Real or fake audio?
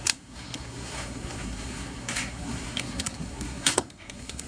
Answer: fake